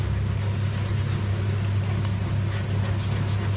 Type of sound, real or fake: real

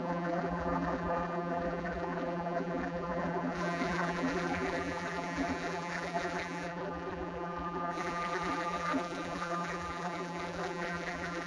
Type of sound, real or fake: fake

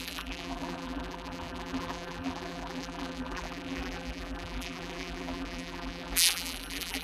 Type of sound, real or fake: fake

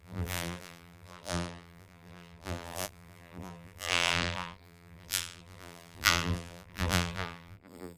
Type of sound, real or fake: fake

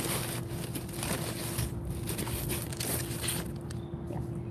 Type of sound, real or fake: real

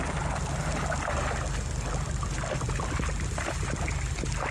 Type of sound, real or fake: real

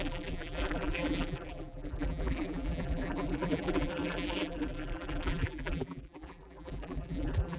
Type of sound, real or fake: fake